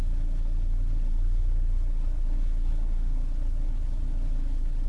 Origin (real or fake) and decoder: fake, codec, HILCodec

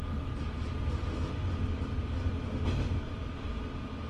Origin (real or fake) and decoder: real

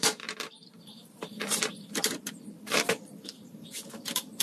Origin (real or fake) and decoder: fake, vocoder, BigVGAN v2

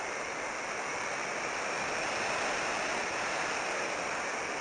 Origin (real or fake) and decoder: real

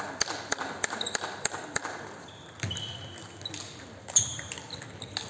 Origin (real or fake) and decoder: real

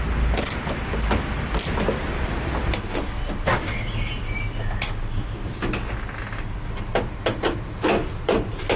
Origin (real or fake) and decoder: fake, vocoder, BigVGAN v2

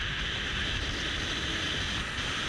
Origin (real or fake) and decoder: real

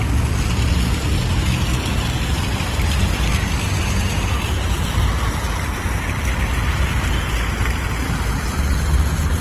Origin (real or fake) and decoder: real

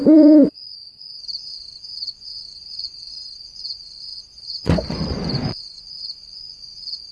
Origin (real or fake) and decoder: fake, vocoder, Vocos